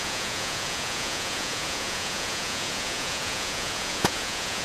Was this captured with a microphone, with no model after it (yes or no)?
no